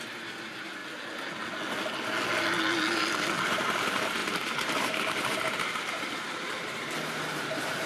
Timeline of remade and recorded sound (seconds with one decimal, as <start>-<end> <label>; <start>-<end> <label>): 0.0-0.8 remade; 0.8-3.5 recorded; 3.5-7.9 remade